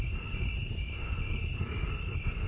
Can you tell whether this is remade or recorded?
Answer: recorded